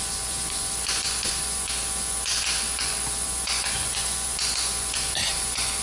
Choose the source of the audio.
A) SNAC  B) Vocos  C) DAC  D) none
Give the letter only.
B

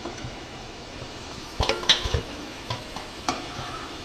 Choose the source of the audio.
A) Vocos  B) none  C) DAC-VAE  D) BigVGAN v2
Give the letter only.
C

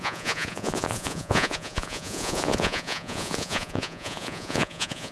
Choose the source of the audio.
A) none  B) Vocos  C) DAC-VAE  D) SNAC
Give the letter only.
B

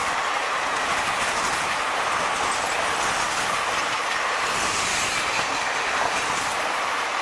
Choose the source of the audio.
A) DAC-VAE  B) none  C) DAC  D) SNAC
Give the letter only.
B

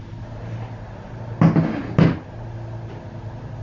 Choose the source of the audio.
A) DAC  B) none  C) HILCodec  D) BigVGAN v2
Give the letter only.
B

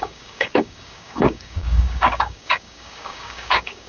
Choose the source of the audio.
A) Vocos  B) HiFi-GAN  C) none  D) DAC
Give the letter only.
D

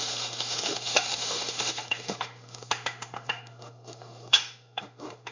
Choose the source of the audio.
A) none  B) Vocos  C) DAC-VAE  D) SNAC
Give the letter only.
C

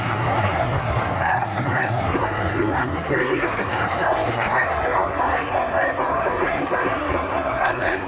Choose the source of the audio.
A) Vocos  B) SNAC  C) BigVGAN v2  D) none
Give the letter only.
B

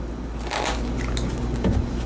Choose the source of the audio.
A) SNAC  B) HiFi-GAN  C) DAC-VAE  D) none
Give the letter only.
D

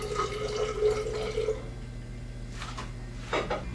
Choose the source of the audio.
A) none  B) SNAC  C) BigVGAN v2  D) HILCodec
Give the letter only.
A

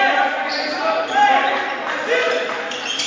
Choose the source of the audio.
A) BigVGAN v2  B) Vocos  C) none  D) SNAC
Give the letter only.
A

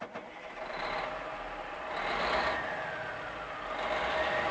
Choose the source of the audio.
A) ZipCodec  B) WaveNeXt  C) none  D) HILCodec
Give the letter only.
C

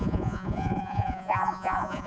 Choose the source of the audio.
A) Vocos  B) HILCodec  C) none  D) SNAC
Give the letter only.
A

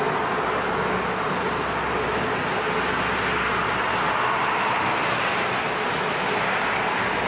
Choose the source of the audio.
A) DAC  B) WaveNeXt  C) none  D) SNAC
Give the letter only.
C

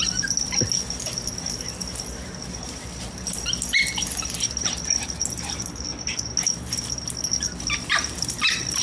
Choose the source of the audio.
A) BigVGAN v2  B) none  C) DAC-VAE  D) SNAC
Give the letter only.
B